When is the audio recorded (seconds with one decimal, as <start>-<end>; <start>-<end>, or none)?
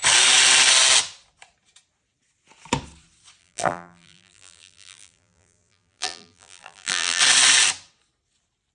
0.0-3.4; 7.2-8.7